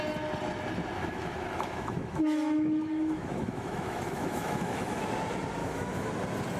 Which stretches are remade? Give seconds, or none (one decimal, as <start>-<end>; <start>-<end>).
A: 1.0-5.0; 5.6-6.1